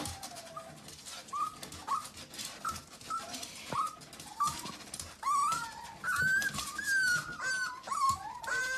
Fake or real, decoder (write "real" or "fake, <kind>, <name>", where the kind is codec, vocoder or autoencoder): real